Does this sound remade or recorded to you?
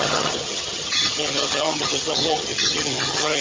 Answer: remade